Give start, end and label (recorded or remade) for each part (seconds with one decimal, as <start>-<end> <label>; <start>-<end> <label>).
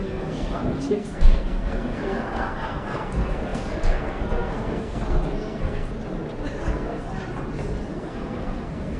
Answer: 0.0-5.9 remade; 5.9-6.6 recorded; 6.6-7.1 remade; 7.1-7.9 recorded; 7.9-9.0 remade